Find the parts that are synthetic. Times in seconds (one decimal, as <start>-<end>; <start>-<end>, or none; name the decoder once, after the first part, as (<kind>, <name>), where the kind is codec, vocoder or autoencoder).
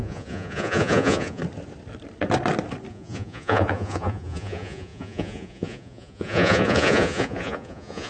0.0-1.4 (vocoder, Vocos); 2.9-8.1